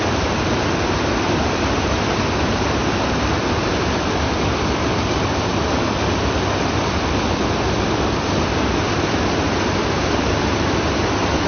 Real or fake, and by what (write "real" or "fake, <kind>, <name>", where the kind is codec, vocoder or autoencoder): fake, vocoder, BigVGAN v2